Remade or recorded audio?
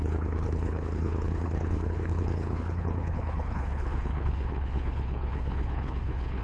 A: remade